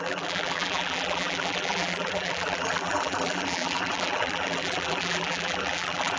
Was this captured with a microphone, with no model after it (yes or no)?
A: no